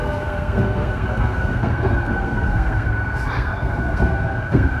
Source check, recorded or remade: remade